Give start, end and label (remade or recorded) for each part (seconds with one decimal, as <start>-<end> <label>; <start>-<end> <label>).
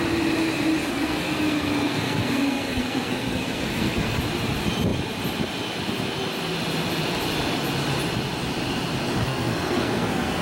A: 0.0-0.8 recorded; 0.8-4.2 remade; 4.2-9.2 recorded; 9.2-10.4 remade